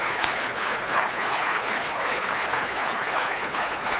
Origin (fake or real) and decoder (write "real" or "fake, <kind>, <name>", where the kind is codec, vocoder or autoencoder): fake, codec, HILCodec